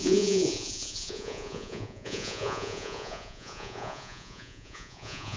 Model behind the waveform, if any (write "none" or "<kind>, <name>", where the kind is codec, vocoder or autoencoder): vocoder, Vocos